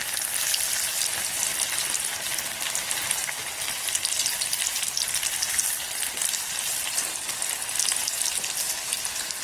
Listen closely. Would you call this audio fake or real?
real